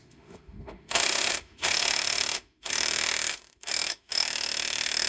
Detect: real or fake fake